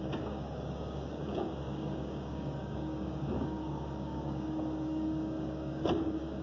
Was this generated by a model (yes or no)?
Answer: yes